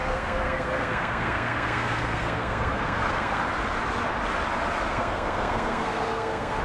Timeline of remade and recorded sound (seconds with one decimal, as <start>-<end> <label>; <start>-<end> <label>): 0.0-3.4 remade; 3.4-4.9 recorded; 4.9-6.6 remade